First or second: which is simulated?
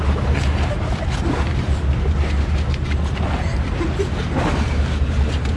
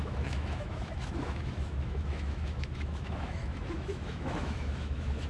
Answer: second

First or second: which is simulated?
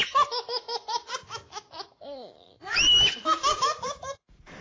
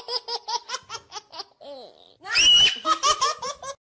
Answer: first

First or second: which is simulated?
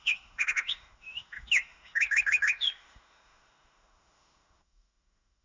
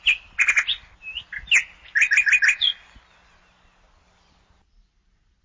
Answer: first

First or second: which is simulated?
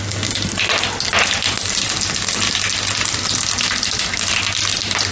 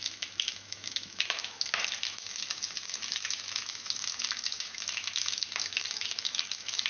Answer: second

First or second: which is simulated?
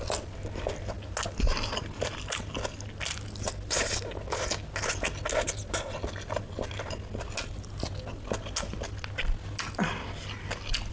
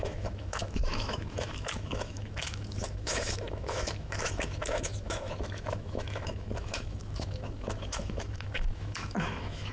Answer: second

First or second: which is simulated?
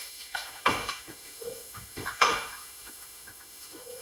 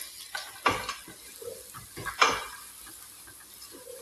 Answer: first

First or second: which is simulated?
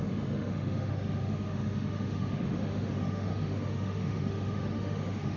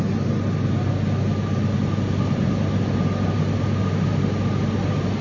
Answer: first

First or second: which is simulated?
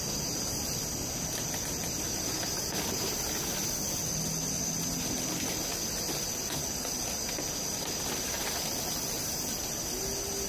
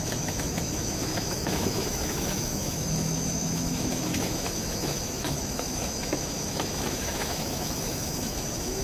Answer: second